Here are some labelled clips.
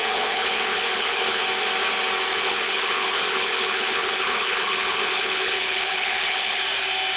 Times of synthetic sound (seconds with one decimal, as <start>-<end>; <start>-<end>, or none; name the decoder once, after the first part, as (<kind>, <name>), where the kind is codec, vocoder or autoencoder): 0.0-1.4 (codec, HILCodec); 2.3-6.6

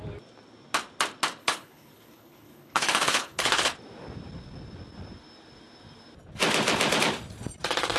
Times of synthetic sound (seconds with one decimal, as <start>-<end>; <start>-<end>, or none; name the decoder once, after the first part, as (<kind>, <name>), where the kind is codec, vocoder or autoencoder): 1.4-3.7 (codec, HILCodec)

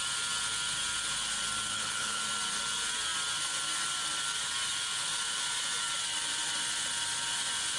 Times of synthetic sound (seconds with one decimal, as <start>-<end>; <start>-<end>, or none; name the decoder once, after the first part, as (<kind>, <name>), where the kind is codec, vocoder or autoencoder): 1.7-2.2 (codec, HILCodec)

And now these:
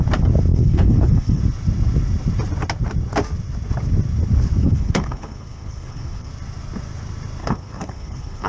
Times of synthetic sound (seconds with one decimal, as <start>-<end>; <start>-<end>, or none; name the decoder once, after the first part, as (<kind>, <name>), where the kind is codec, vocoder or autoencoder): 0.5-1.4 (codec, HILCodec); 4.6-6.3; 7.4-8.5

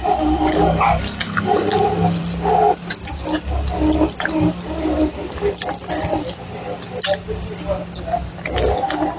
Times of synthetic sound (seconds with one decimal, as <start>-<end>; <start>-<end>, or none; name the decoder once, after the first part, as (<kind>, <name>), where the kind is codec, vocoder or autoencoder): none

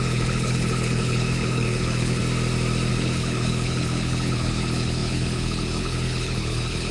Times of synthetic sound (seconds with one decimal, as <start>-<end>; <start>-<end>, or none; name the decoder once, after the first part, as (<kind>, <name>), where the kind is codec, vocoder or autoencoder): 0.0-2.2 (codec, HILCodec); 2.9-6.9